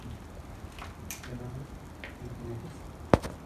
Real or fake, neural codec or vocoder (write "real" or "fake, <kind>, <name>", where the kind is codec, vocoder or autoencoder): real